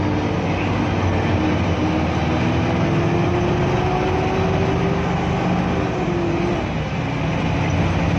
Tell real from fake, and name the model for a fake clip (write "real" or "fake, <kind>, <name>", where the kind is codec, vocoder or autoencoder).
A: real